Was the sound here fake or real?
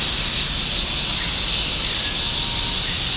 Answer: real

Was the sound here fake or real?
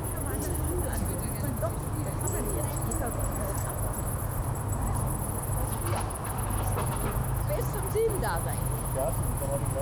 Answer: real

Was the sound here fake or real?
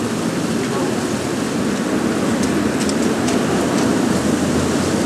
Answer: real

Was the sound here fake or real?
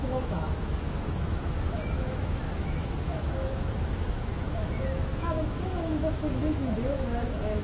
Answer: fake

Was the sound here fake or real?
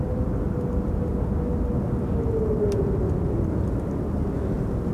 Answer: real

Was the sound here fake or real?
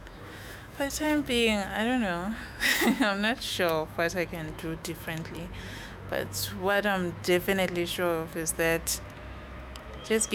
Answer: fake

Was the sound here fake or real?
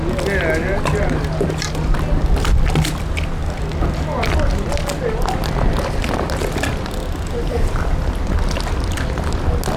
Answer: real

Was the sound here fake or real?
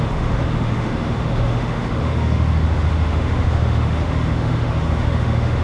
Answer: fake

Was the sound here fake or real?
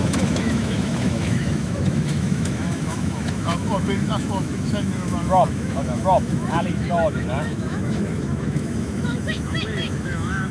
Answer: fake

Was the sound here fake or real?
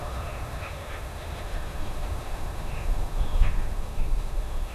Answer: fake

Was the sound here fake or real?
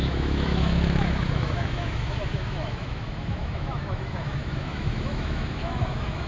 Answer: fake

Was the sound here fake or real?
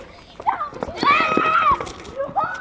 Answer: real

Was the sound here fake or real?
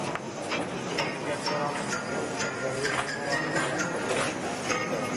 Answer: real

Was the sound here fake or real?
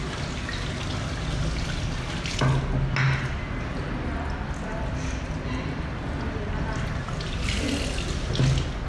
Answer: real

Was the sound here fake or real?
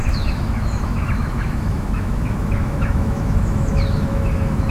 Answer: fake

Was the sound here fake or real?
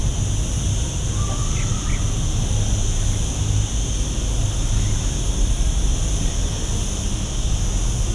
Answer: real